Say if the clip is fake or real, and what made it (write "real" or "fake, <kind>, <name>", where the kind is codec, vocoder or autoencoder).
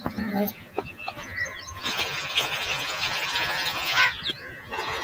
fake, vocoder, Vocos